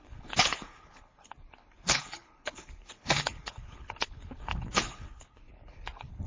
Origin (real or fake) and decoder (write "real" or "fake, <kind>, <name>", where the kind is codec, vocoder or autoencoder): fake, codec, HILCodec